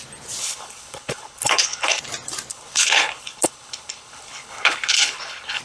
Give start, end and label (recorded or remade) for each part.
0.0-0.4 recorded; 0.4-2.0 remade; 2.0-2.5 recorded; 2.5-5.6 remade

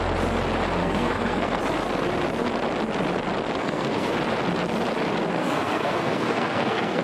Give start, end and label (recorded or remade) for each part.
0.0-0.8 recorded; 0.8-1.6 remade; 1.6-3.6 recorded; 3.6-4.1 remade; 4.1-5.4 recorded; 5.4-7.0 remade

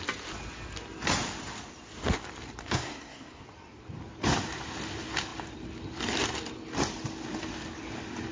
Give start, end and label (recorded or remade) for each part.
0.0-2.6 recorded; 2.6-3.4 remade; 3.4-8.3 recorded

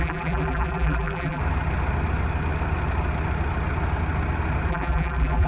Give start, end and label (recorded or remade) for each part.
0.0-1.4 remade; 1.4-4.7 recorded; 4.7-5.5 remade

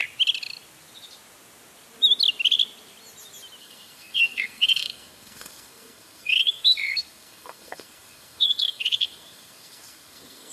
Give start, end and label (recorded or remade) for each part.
0.0-3.6 recorded; 3.6-10.5 remade

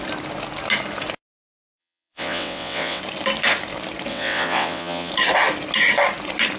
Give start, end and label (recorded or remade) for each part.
0.0-1.8 recorded; 1.8-3.0 remade; 3.0-4.1 recorded; 4.1-5.1 remade; 5.1-6.6 recorded

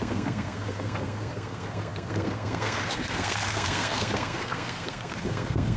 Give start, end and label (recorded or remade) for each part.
0.0-5.8 remade

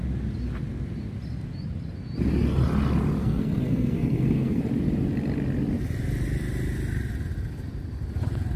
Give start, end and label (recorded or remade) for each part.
0.0-3.2 recorded; 3.2-4.6 remade; 4.6-8.6 recorded